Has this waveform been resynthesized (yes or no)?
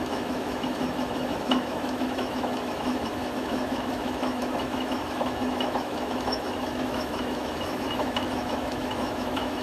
yes